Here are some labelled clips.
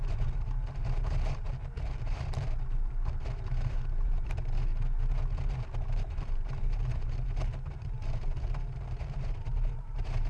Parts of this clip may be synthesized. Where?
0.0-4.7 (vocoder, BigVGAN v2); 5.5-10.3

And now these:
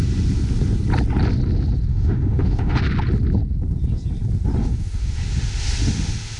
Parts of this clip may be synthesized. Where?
1.9-2.8 (autoencoder, DAC-VAE); 4.6-6.4

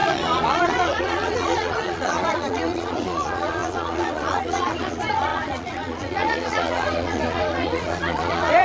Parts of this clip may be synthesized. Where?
0.0-8.6 (vocoder, Vocos)